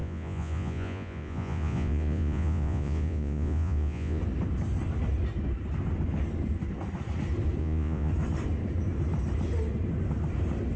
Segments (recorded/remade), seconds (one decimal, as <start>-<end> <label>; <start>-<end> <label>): 0.0-4.2 remade; 4.2-7.6 recorded; 7.6-8.1 remade; 8.1-10.8 recorded